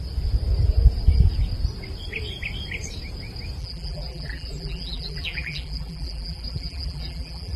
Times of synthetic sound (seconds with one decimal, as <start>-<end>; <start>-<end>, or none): 3.6-7.6